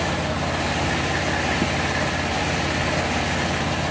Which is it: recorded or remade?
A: recorded